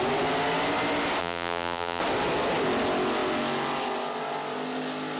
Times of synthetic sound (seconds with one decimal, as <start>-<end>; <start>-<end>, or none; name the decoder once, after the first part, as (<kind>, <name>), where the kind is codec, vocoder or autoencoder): 1.2-2.0 (vocoder, BigVGAN v2)